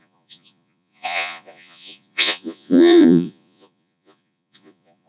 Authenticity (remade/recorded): remade